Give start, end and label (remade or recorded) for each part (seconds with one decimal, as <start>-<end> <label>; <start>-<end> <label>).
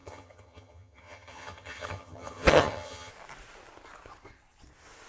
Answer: 0.0-3.1 remade; 3.1-5.1 recorded